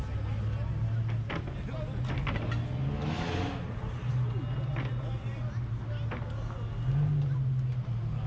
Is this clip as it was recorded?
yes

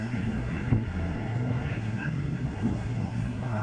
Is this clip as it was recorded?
no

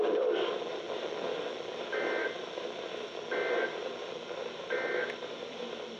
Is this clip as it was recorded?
yes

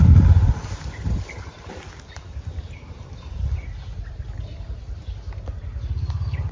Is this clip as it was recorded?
yes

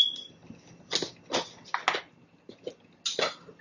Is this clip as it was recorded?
yes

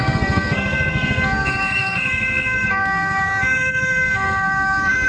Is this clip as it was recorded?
no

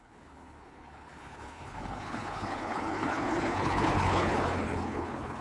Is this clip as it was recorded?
no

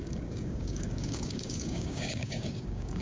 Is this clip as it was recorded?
no